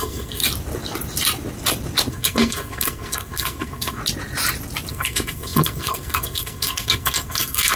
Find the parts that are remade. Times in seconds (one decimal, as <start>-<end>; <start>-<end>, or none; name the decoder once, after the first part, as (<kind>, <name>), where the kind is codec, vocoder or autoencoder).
0.0-0.4 (codec, SNAC); 2.1-4.0; 4.9-7.8

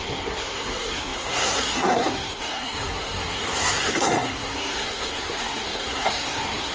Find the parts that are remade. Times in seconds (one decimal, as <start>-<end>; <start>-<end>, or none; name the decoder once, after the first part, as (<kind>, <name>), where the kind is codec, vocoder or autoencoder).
0.0-6.7 (codec, SNAC)

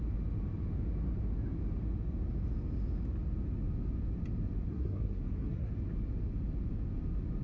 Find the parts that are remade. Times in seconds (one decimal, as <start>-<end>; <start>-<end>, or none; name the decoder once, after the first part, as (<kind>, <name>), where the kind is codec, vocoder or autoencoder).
4.7-5.7 (codec, SNAC)

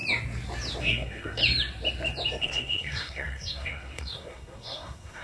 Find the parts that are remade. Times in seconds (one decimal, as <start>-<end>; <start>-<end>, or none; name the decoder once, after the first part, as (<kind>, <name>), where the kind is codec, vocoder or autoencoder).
0.8-1.4 (codec, SNAC); 2.4-5.2